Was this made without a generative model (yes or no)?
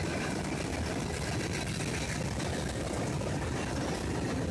yes